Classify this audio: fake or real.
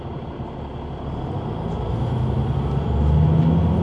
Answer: real